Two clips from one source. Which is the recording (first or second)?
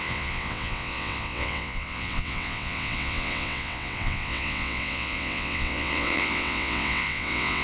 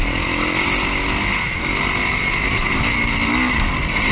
second